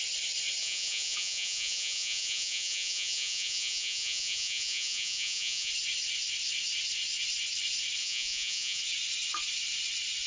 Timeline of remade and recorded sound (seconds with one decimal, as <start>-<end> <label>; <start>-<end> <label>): 0.0-0.6 recorded; 0.6-5.7 remade; 5.7-8.0 recorded; 8.0-8.8 remade; 8.8-10.3 recorded